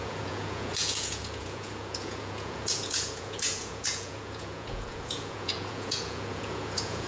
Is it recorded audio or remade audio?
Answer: remade